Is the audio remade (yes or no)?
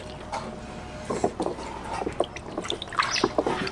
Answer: no